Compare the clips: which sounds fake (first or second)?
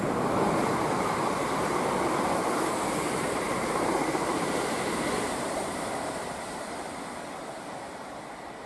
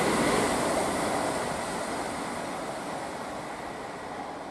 first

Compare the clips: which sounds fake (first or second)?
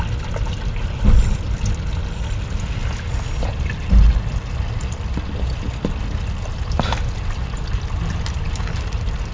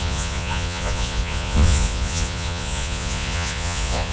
second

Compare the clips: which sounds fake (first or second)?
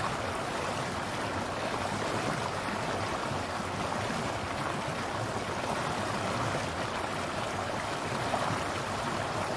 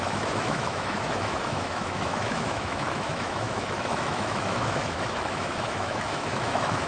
second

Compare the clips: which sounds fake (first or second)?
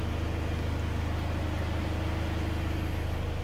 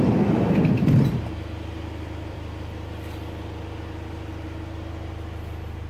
second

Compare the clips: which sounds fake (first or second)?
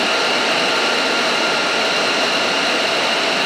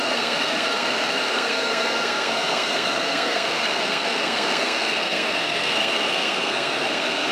second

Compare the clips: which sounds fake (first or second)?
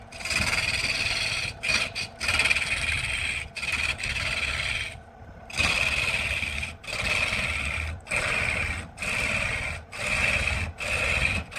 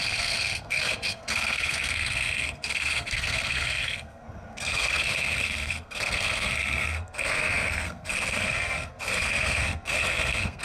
second